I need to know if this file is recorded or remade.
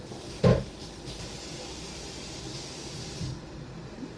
recorded